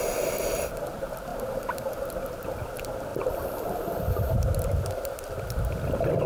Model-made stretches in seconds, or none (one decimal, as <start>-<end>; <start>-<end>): 0.0-6.3